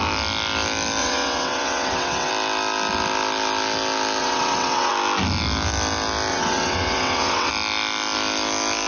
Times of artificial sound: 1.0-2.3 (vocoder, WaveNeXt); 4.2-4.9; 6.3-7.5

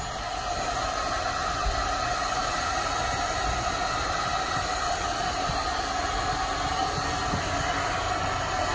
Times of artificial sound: none

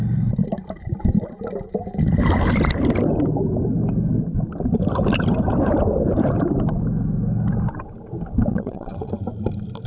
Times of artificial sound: 8.5-9.1 (vocoder, WaveNeXt)

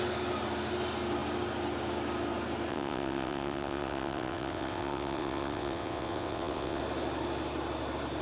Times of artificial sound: 2.7-6.8 (vocoder, WaveNeXt)

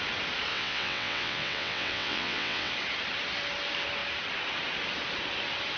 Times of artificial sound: 0.5-2.7 (vocoder, WaveNeXt)

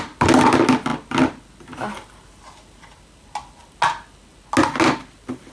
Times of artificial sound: none

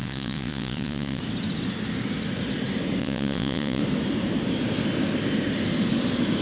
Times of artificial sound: 0.0-1.2 (vocoder, WaveNeXt); 3.0-3.8

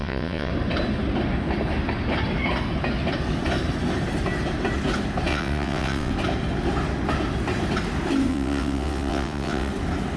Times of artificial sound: 0.0-0.5 (vocoder, WaveNeXt); 5.3-6.1; 8.3-9.7